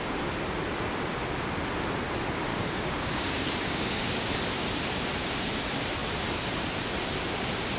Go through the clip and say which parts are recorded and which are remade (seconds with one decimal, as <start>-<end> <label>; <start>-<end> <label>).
0.0-2.5 recorded; 2.5-4.3 remade; 4.3-7.8 recorded